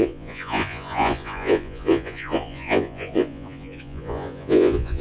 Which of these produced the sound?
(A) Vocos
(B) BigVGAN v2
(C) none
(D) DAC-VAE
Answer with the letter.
A